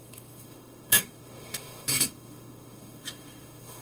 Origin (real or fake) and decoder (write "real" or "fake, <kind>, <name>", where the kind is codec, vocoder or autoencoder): fake, autoencoder, DAC-VAE